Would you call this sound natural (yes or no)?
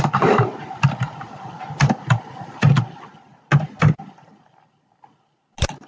yes